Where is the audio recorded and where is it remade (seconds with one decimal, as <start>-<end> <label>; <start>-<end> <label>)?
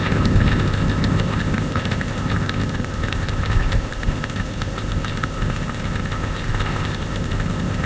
0.0-7.9 remade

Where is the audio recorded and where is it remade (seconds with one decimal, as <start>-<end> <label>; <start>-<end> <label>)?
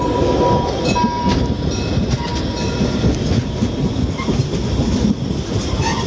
0.0-6.1 recorded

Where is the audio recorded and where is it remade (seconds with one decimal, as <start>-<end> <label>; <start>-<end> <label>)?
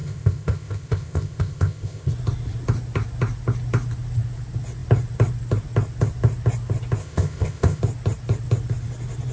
0.0-2.1 remade; 2.1-7.0 recorded; 7.0-7.8 remade; 7.8-9.3 recorded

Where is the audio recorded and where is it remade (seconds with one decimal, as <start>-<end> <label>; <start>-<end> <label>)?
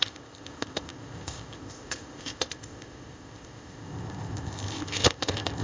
0.0-5.6 remade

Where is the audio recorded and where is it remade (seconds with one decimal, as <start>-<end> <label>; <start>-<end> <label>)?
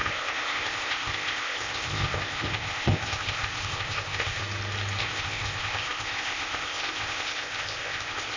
0.0-4.4 remade; 4.4-5.0 recorded; 5.0-8.4 remade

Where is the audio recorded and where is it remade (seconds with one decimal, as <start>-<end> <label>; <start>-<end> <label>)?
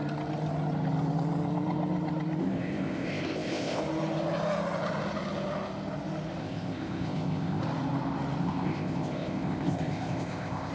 0.0-2.4 recorded; 2.4-3.8 remade; 3.8-6.4 recorded; 6.4-7.6 remade; 7.6-8.4 recorded; 8.4-10.7 remade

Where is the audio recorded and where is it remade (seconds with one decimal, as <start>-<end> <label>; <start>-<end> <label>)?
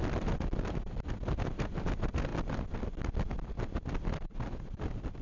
0.0-5.2 recorded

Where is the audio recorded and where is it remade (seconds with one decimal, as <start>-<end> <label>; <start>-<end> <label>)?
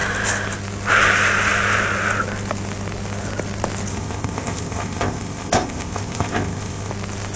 0.0-3.9 recorded; 3.9-6.9 remade; 6.9-7.4 recorded